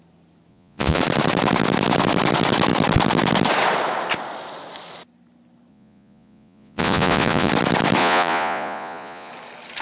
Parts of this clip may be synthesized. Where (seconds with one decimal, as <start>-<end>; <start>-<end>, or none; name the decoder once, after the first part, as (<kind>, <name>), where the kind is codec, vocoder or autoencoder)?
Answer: 0.5-1.0 (vocoder, Vocos); 5.7-7.5; 8.0-9.3